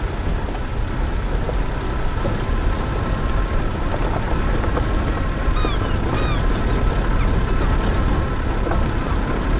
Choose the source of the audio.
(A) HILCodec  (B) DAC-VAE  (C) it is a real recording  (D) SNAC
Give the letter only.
C